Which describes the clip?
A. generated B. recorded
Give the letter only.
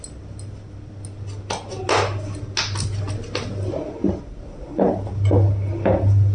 B